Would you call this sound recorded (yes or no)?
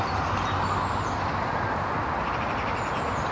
yes